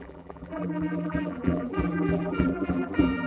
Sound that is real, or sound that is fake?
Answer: fake